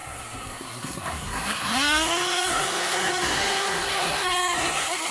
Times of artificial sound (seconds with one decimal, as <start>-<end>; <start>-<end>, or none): 0.0-5.1